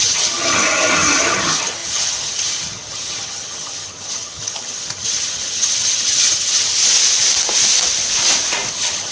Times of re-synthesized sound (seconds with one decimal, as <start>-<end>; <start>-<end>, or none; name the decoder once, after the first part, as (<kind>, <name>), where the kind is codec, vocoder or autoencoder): 0.0-6.8 (vocoder, HiFi-GAN); 8.7-9.1